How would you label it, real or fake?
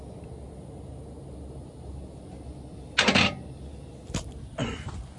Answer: real